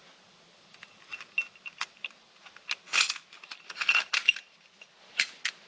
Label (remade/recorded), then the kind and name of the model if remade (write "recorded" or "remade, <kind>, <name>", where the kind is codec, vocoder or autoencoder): recorded